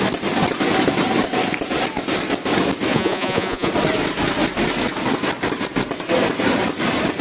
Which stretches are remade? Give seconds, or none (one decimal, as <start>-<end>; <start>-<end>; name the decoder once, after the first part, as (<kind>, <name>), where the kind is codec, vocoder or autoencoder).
2.9-3.7 (vocoder, Vocos)